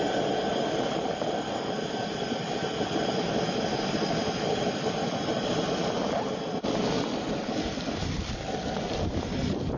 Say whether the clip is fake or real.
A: real